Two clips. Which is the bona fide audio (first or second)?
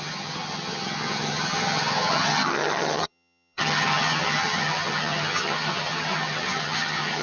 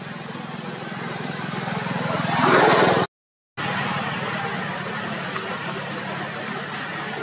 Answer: second